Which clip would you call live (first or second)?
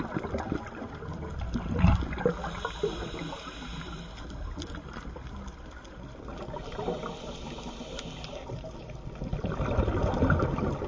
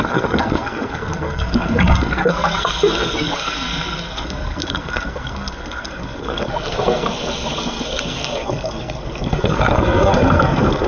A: first